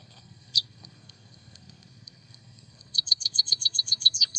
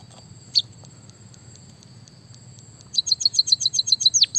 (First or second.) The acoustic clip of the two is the second